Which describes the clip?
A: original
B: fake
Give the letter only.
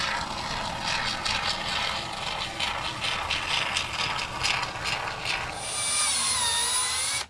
A